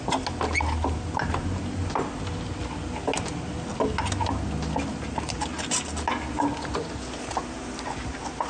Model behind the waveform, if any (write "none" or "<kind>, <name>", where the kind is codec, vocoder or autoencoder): none